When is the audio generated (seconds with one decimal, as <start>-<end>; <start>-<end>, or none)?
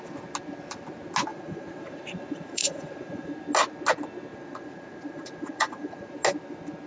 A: 1.3-3.3; 4.3-6.1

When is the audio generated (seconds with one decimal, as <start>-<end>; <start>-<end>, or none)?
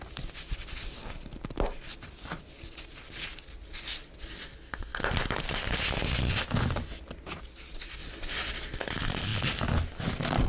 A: none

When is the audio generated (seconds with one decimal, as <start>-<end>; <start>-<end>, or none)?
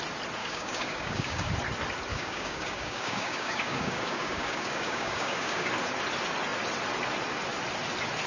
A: 0.4-1.5; 2.1-5.7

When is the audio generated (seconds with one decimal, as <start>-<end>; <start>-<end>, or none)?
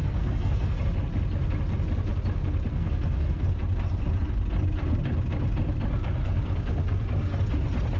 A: 0.0-0.8; 2.7-3.4